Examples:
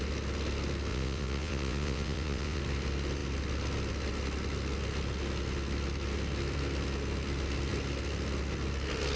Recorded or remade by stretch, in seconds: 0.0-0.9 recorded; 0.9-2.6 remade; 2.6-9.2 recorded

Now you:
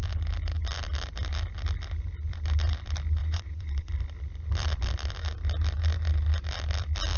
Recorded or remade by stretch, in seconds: 0.0-3.2 recorded; 3.2-3.9 remade; 3.9-7.2 recorded

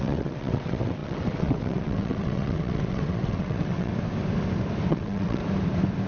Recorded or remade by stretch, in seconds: 0.0-3.9 remade; 3.9-4.9 recorded; 4.9-5.4 remade; 5.4-6.1 recorded

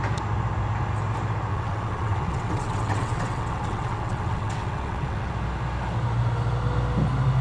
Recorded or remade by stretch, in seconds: 0.0-1.5 recorded; 1.5-5.3 remade; 5.3-7.4 recorded

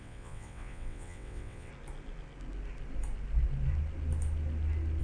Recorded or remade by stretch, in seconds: 0.0-1.7 remade; 1.7-5.0 recorded

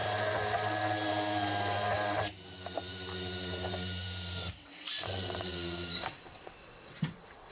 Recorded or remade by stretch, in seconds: 0.0-4.5 recorded; 4.5-7.5 remade

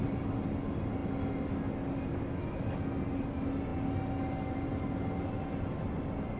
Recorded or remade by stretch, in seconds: 0.0-6.4 recorded

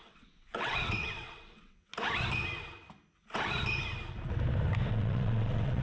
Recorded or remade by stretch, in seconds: 0.0-1.9 remade; 1.9-4.9 recorded; 4.9-5.8 remade